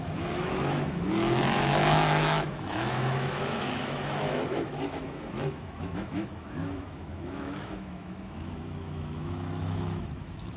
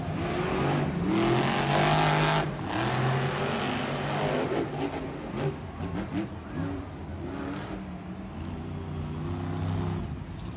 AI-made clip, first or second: first